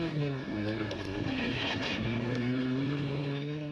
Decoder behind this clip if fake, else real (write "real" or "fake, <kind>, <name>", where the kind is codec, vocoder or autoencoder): fake, codec, SNAC